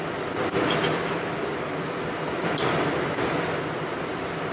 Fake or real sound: real